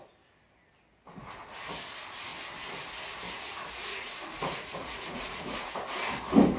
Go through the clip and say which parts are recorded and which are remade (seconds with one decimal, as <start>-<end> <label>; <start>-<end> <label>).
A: 0.0-3.9 recorded; 3.9-5.7 remade; 5.7-6.6 recorded

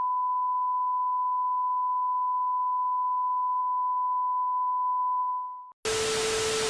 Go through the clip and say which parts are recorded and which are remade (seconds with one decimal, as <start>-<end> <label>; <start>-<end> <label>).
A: 0.0-3.6 recorded; 3.6-5.6 remade; 5.6-6.7 recorded

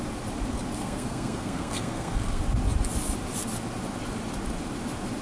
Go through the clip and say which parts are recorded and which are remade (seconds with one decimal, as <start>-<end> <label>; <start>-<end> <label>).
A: 0.0-0.8 recorded; 0.8-2.4 remade; 2.4-5.2 recorded

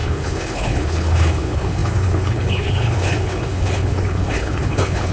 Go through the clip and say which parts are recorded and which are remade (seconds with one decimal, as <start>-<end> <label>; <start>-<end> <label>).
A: 0.0-5.1 remade